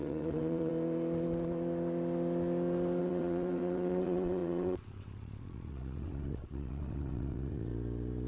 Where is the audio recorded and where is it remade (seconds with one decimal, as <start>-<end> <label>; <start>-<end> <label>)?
0.0-0.7 remade; 0.7-3.0 recorded; 3.0-7.7 remade; 7.7-8.3 recorded